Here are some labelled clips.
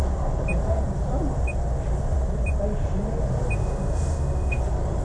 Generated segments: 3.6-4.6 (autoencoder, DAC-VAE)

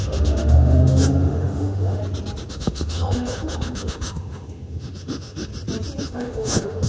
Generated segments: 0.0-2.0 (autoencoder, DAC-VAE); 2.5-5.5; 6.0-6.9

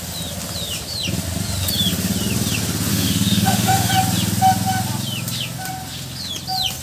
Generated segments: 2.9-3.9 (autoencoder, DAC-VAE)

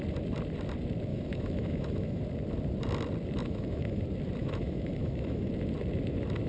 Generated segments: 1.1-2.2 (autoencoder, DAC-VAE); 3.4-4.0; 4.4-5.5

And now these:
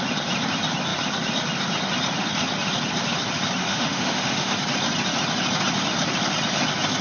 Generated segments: 3.6-4.5 (autoencoder, DAC-VAE)